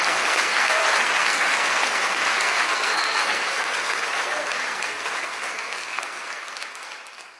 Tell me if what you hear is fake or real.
fake